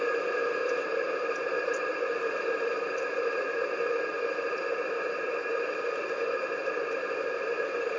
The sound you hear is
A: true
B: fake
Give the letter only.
A